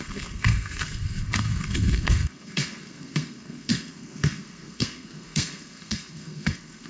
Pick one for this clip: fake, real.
fake